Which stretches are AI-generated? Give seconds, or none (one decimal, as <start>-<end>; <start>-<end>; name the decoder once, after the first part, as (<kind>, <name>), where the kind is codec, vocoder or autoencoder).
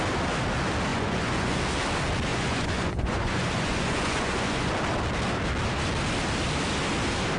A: 0.9-1.6 (vocoder, Vocos); 2.3-4.7